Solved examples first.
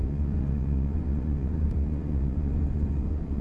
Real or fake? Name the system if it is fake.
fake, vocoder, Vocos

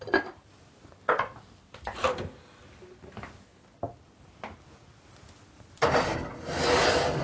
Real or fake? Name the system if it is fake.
real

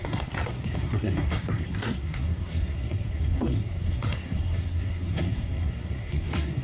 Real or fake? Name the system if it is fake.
fake, codec, SNAC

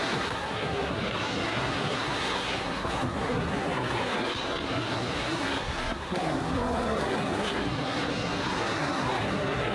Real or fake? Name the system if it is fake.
fake, codec, SNAC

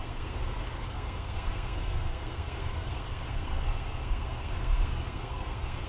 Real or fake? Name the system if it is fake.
fake, codec, SNAC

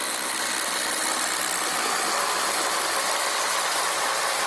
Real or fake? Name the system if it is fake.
real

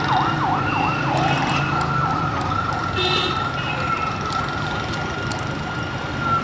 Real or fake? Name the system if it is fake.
real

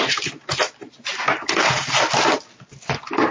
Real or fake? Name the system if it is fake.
real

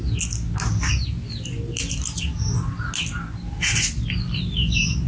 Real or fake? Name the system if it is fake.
real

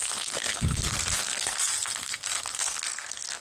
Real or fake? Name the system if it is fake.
fake, codec, SNAC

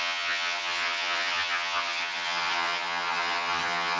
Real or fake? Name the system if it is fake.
fake, vocoder, HiFi-GAN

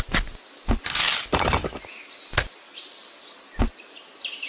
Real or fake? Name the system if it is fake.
real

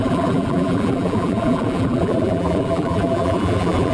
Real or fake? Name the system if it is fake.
fake, vocoder, BigVGAN v2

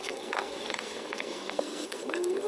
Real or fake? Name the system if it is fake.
fake, codec, SNAC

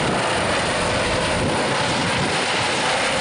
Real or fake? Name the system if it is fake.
real